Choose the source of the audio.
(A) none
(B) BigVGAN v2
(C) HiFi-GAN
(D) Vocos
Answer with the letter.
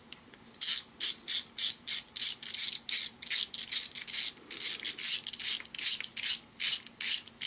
A